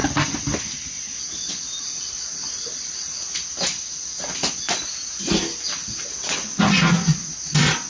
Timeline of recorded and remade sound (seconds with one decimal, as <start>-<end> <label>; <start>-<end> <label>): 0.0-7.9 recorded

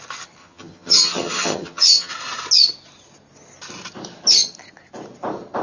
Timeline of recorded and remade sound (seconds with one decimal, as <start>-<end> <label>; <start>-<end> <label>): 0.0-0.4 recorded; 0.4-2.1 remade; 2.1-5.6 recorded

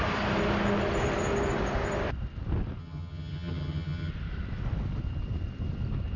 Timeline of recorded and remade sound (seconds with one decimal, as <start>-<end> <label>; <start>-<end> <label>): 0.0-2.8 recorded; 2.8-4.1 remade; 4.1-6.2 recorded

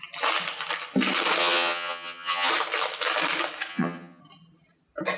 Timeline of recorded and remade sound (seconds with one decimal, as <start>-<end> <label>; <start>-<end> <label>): 0.0-1.4 recorded; 1.4-2.5 remade; 2.5-3.7 recorded; 3.7-4.2 remade; 4.2-5.2 recorded

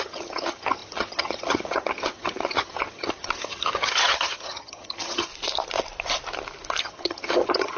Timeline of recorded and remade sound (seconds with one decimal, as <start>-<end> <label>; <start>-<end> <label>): 0.0-5.3 remade; 5.3-6.8 recorded; 6.8-7.8 remade

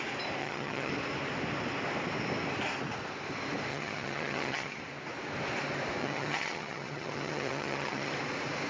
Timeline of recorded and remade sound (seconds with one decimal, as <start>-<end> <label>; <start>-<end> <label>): 0.0-0.4 recorded; 0.4-0.9 remade; 0.9-3.7 recorded; 3.7-4.8 remade; 4.8-6.0 recorded; 6.0-8.1 remade; 8.1-8.7 recorded

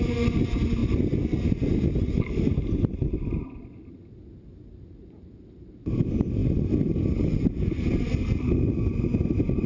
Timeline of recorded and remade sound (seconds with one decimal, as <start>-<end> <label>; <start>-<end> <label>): 0.0-9.7 recorded